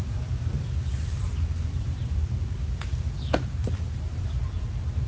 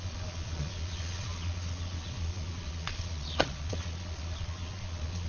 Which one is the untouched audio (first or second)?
first